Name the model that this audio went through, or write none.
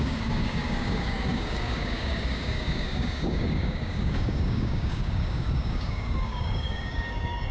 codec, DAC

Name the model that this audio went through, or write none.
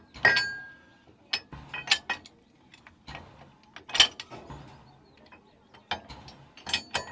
none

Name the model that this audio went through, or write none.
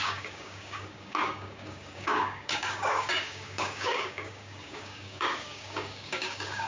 codec, DAC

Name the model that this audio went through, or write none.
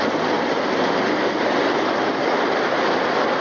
none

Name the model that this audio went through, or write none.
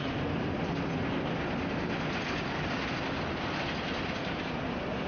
none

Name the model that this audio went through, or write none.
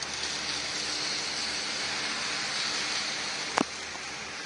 none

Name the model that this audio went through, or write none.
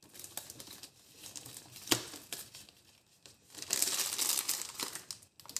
none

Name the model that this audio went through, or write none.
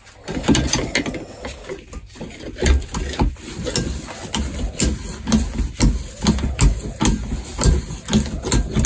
none